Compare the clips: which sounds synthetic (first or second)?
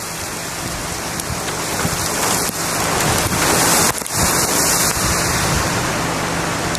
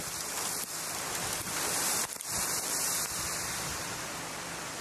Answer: second